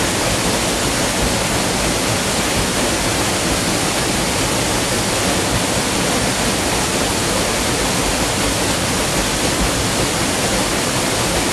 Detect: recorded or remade recorded